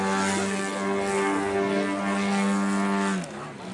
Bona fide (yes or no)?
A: yes